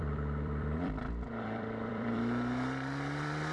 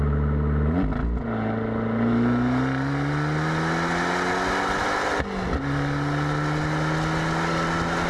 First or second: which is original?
second